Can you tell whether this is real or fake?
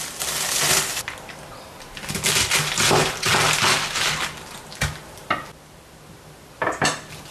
real